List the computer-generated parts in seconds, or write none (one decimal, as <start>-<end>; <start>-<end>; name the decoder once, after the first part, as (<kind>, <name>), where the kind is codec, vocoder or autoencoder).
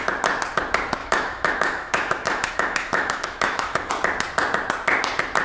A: 1.0-3.9 (autoencoder, DAC-VAE)